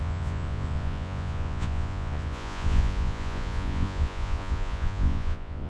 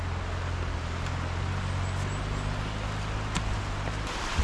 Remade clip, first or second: first